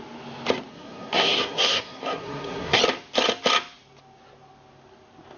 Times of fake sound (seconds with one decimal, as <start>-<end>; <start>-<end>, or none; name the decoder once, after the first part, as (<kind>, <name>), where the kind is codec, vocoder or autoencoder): 0.7-2.8 (codec, SNAC)